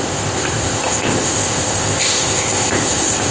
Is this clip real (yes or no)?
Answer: no